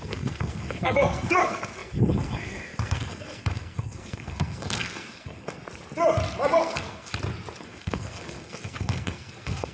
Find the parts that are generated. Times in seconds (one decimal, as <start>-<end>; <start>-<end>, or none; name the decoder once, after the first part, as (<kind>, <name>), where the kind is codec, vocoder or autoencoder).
0.0-5.6 (codec, SNAC); 6.6-7.1; 7.6-9.7